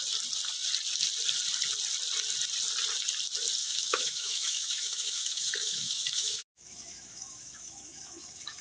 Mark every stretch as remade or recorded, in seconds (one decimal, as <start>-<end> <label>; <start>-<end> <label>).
0.0-3.6 recorded; 3.6-8.6 remade